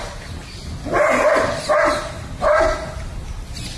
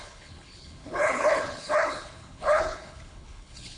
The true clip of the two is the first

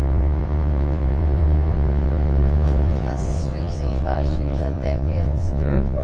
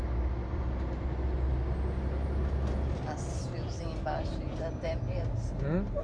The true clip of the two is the second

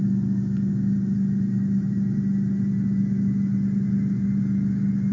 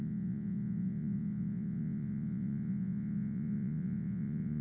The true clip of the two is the first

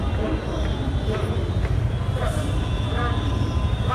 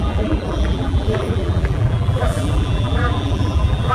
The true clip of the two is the first